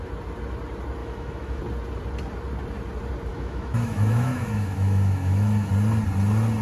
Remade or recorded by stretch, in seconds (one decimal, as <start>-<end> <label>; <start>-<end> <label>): 0.0-1.0 recorded; 1.0-1.6 remade; 1.6-3.3 recorded; 3.3-5.7 remade; 5.7-6.6 recorded